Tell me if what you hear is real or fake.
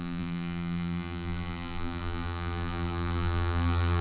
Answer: fake